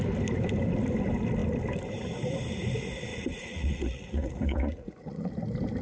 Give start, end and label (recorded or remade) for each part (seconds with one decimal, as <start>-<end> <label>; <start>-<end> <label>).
0.0-3.1 recorded; 3.1-5.3 remade; 5.3-5.8 recorded